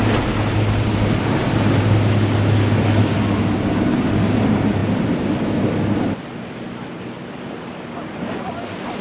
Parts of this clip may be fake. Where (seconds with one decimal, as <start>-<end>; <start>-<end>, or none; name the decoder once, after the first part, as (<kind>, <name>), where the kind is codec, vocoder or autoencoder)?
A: none